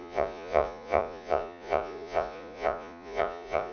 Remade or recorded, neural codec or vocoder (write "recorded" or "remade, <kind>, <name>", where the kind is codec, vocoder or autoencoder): remade, vocoder, Vocos